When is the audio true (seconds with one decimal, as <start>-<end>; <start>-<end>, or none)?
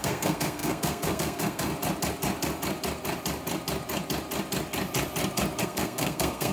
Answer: 1.7-5.6